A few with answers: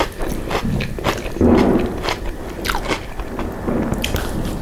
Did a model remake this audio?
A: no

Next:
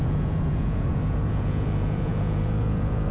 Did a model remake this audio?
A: yes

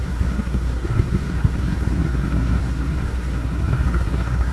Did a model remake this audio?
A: yes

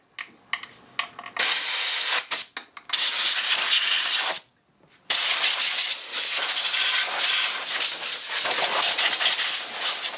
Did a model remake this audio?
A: no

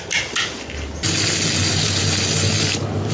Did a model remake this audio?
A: no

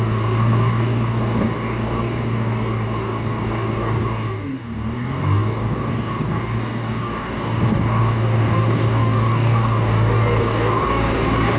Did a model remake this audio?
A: yes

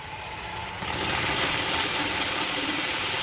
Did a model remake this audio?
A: yes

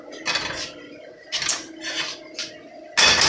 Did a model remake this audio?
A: no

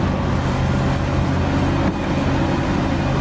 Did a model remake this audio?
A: no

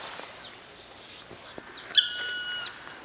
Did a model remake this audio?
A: no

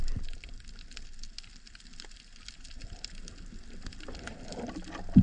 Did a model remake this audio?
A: no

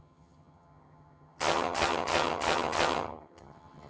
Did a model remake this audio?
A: yes